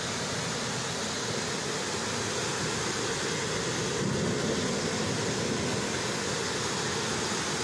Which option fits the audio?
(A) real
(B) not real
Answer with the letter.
A